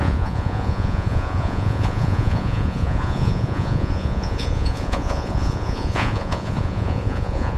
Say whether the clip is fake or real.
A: fake